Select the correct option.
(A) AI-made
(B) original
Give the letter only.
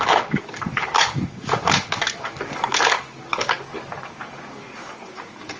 A